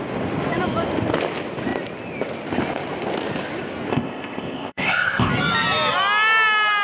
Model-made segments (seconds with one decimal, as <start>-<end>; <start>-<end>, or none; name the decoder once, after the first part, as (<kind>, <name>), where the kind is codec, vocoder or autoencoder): 3.9-5.3 (codec, ZipCodec)